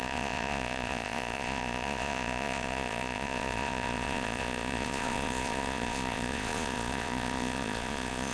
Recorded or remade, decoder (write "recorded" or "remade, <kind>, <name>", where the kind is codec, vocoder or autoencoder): remade, vocoder, Vocos